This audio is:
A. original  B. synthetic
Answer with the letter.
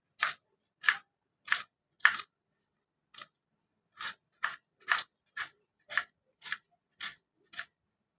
A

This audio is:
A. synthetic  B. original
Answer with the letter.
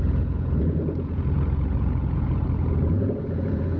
A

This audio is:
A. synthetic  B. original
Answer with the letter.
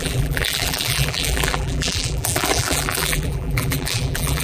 A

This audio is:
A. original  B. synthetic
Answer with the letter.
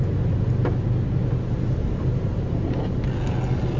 A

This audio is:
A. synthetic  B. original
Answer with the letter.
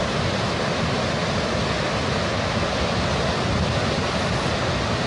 B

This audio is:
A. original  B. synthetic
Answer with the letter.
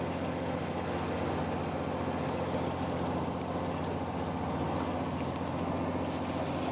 A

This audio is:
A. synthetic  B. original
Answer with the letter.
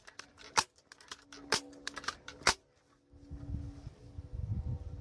B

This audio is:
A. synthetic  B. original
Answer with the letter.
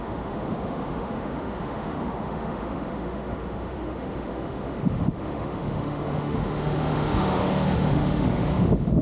A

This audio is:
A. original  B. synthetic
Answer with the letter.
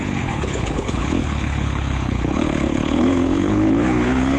B